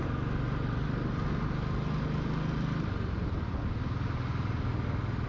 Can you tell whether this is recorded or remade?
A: recorded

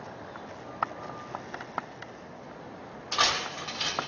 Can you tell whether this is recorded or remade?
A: recorded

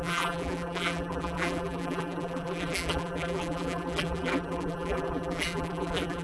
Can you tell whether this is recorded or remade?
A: remade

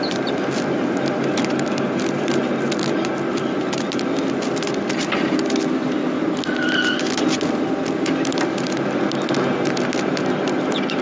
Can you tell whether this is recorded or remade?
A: recorded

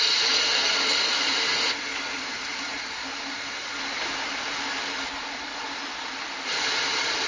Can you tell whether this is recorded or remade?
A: recorded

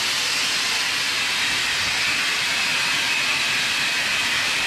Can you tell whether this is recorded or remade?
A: recorded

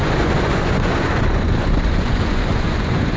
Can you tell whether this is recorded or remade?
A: remade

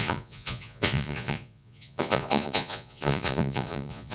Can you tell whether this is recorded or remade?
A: remade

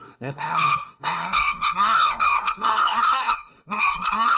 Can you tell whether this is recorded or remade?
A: remade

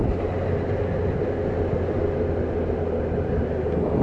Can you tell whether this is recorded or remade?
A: recorded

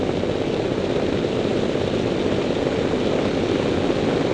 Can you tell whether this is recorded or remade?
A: recorded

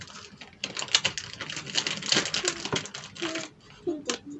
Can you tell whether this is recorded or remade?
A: recorded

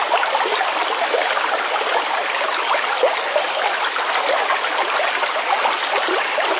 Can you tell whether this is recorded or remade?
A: recorded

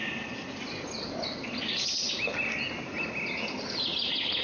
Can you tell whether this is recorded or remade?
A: recorded